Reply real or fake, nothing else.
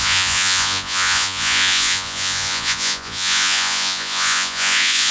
fake